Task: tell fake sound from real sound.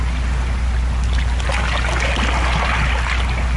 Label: real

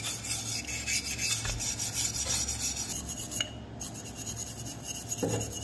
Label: real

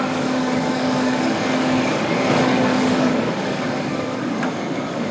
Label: fake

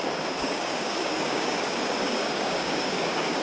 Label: fake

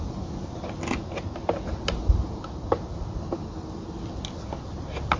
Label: real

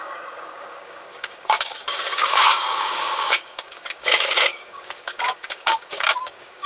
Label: fake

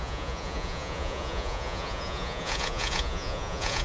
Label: fake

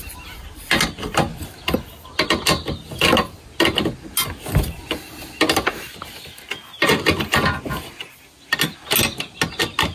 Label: real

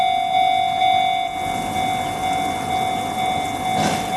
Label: real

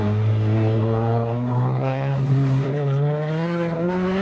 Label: fake